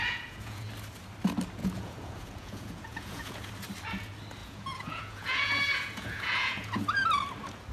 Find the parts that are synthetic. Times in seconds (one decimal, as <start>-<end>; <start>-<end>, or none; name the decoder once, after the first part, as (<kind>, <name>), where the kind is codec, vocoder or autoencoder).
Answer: 0.0-0.7 (vocoder, Vocos); 1.6-3.5; 4.4-6.8